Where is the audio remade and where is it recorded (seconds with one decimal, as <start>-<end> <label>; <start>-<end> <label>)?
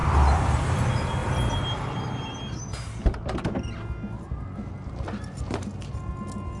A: 0.0-6.6 recorded